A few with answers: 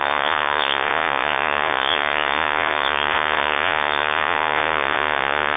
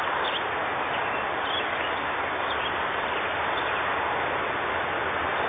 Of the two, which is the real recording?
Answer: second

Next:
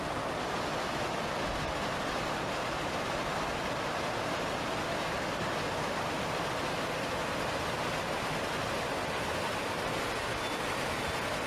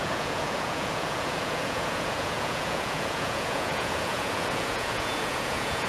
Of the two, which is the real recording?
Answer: first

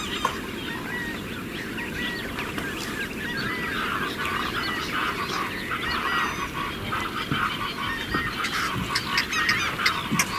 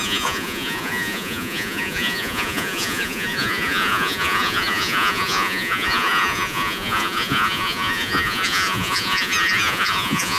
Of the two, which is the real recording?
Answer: first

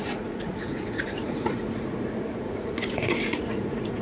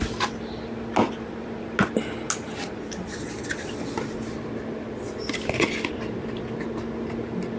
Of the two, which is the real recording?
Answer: second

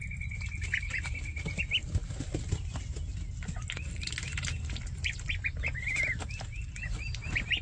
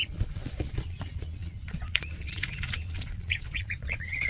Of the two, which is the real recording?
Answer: first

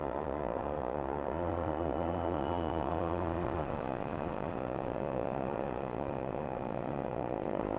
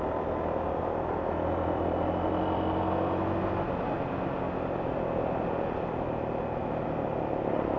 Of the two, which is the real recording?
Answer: second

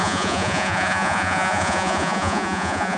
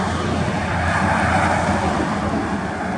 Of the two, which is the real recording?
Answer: second